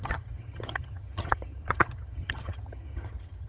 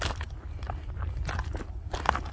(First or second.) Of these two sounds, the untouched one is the second